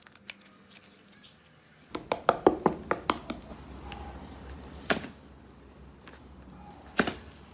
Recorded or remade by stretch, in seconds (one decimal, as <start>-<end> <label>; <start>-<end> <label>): 0.0-7.5 recorded